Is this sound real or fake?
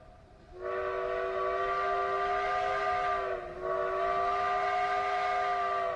real